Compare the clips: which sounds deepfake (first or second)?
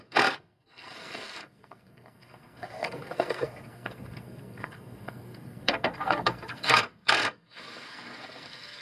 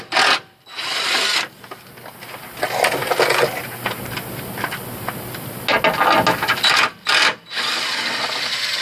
first